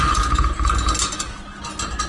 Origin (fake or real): real